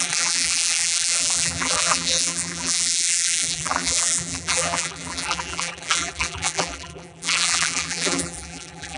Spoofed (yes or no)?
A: yes